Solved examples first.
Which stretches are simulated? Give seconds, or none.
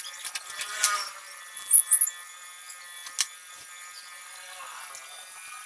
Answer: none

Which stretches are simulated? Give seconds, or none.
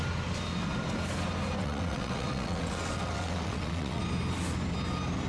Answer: 1.6-4.0 (vocoder, WaveNeXt)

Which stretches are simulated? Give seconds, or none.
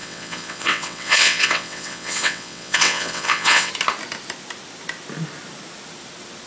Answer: 0.0-3.7 (vocoder, WaveNeXt)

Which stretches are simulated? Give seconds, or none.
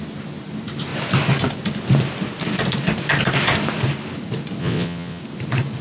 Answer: 4.6-5.2 (vocoder, WaveNeXt)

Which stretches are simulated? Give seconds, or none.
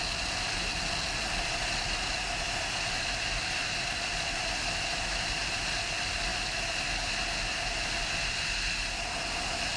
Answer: none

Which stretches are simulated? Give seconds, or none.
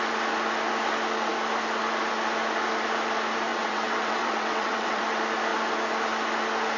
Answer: 3.5-5.0 (vocoder, WaveNeXt)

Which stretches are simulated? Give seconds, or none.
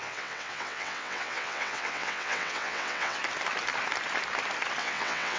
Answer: 0.0-3.2 (vocoder, WaveNeXt); 4.8-5.4